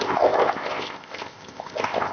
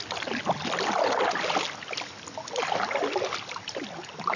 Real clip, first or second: second